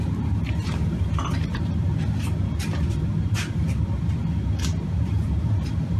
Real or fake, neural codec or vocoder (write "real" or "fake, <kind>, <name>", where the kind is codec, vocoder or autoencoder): fake, vocoder, BigVGAN v2